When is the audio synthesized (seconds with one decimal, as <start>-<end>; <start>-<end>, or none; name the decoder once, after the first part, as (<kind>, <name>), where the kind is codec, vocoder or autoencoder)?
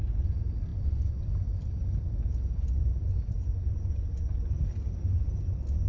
none